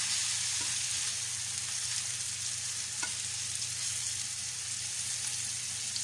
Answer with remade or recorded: recorded